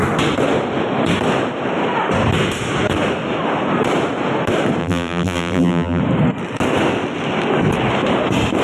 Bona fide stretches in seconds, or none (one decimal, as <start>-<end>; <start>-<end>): 0.0-4.8; 6.0-8.6